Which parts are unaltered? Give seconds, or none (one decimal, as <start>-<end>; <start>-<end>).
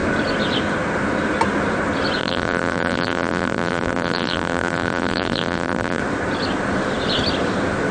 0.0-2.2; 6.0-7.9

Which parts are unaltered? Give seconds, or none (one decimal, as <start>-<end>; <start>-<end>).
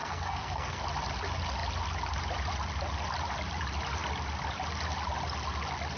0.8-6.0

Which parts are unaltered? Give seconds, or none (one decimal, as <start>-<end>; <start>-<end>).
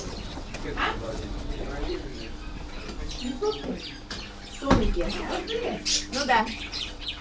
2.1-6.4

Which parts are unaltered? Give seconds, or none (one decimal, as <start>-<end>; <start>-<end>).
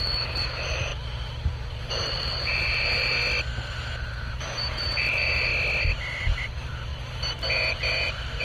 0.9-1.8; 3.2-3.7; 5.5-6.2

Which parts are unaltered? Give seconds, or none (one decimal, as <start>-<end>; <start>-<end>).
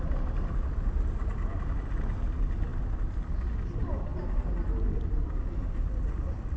0.0-6.6